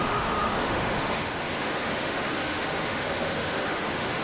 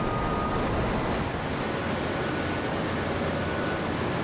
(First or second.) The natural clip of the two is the second